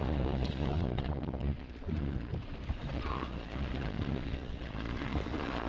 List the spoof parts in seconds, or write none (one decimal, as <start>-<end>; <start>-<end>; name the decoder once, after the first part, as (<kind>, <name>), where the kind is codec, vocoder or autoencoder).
0.0-2.3 (vocoder, Vocos); 2.9-5.7